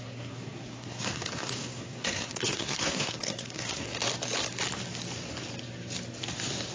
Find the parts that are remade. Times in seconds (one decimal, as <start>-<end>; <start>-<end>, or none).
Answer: 0.0-3.9

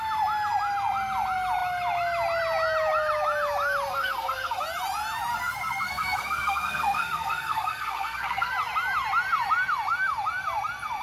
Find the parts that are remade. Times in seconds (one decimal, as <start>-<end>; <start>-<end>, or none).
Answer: 3.9-4.6; 5.3-8.5

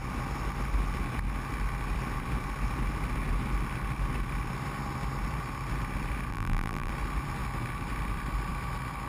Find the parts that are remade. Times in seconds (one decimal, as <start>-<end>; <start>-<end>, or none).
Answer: 6.3-6.9